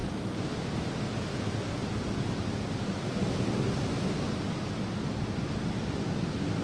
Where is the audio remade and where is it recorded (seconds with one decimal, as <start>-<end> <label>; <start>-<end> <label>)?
0.0-0.7 remade; 0.7-6.6 recorded